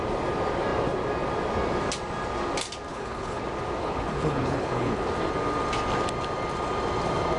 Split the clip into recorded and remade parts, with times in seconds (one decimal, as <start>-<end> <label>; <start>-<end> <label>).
0.0-2.9 recorded; 2.9-3.4 remade; 3.4-3.8 recorded; 3.8-5.0 remade; 5.0-7.4 recorded